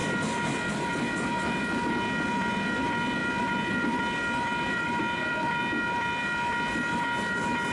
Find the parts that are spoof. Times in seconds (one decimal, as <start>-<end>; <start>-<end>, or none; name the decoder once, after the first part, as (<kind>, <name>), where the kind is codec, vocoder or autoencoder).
3.2-4.0 (vocoder, BigVGAN v2); 4.5-5.6